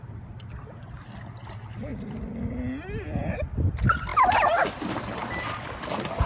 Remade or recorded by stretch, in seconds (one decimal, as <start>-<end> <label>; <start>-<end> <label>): 0.0-6.3 recorded